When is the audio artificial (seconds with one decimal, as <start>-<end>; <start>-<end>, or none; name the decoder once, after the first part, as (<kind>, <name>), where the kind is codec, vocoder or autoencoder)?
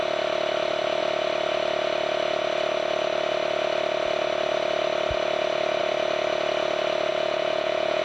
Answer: 7.1-8.0 (vocoder, Vocos)